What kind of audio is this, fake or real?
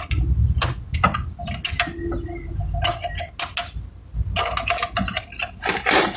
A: real